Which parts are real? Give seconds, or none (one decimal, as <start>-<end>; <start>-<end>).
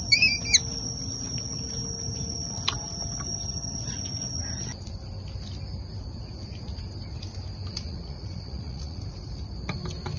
0.0-7.7; 9.0-10.2